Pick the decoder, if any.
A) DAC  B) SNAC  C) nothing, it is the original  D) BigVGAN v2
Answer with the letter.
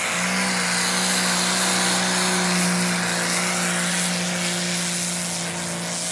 C